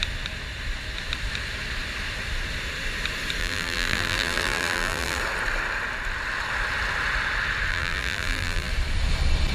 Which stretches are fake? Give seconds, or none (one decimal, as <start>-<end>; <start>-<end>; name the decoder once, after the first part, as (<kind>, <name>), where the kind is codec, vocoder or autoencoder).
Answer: 3.4-5.2 (vocoder, BigVGAN v2); 7.7-8.7